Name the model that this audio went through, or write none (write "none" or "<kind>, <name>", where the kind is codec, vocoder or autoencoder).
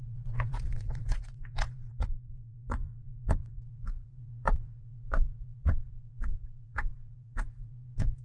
vocoder, WaveNeXt